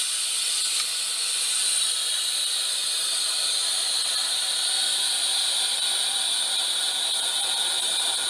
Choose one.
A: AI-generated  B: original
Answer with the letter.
B